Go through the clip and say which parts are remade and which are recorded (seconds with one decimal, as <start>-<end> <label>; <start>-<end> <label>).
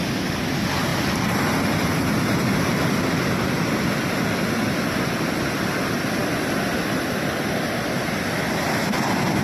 0.0-9.4 recorded